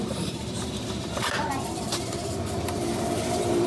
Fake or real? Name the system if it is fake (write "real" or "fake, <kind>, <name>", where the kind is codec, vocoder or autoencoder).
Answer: fake, vocoder, BigVGAN v2